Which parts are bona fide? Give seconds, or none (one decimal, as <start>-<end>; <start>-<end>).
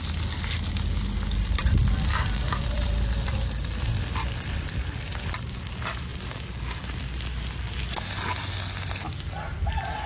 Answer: 0.0-2.1; 5.6-10.1